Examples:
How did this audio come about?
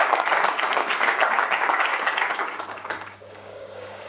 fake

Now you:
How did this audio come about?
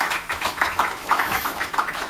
fake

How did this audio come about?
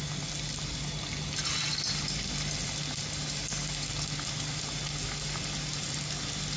real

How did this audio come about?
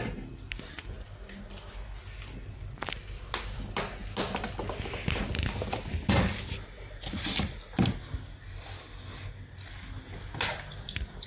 real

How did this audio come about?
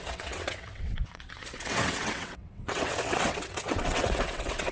fake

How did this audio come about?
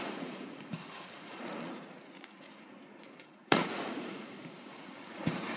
fake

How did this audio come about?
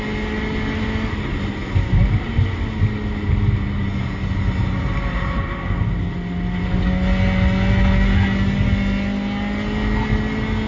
real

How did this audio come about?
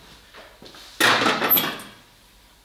real